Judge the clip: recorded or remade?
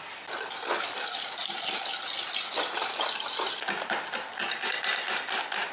recorded